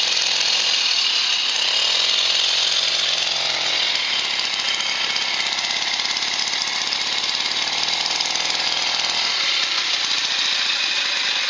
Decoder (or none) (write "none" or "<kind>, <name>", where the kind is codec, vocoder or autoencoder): none